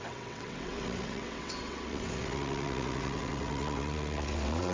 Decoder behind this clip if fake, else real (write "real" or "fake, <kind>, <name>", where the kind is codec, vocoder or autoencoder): fake, vocoder, WaveNeXt